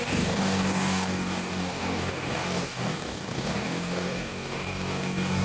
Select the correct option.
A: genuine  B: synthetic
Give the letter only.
B